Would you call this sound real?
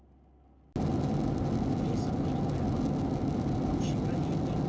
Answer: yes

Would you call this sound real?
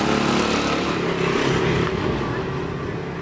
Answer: yes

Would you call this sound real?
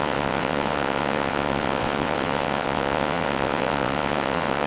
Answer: no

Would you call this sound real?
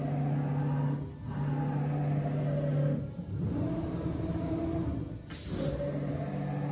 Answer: yes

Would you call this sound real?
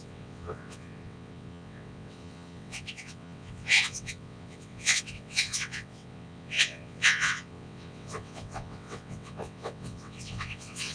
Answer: no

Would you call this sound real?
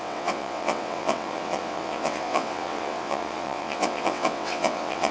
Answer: no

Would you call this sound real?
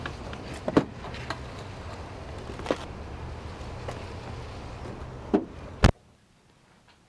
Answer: yes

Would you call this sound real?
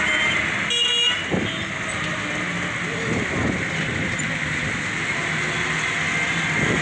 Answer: yes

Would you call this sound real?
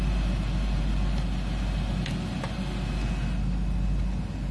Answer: yes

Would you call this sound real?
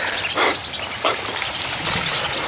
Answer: yes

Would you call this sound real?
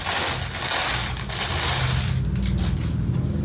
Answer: yes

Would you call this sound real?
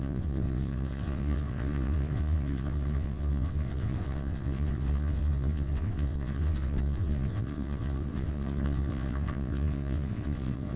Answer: no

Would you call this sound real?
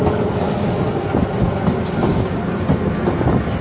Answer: yes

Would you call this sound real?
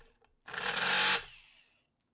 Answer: yes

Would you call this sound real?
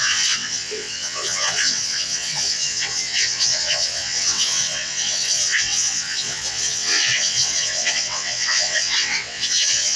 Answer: no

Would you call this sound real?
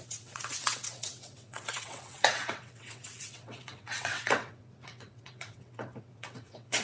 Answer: no